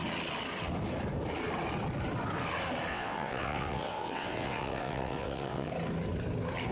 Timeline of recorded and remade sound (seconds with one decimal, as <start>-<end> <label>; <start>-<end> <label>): 0.0-2.9 recorded; 2.9-5.7 remade; 5.7-6.7 recorded